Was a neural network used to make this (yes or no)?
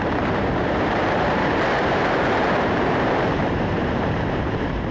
yes